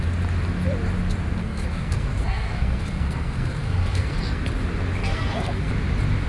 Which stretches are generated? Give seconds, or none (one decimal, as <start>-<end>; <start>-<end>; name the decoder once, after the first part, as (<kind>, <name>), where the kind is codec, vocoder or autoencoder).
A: 1.4-4.4 (codec, SNAC); 5.0-5.7